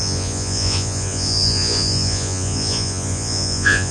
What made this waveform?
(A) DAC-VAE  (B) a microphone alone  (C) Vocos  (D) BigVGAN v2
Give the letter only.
C